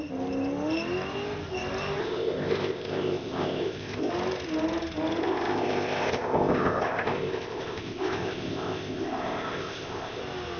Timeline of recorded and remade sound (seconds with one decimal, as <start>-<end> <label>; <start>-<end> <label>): 0.0-2.0 recorded; 2.0-4.1 remade; 4.1-5.2 recorded; 5.2-10.2 remade; 10.2-10.6 recorded